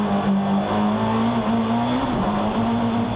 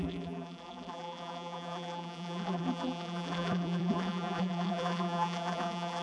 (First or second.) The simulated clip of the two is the second